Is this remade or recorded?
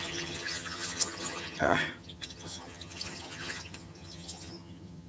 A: remade